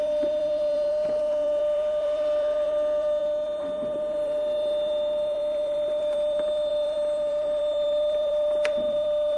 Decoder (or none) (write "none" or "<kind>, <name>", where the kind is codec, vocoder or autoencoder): vocoder, BigVGAN v2